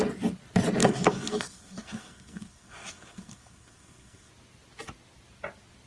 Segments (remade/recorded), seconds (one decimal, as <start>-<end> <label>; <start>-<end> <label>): 0.0-0.8 recorded; 0.8-4.3 remade; 4.3-5.9 recorded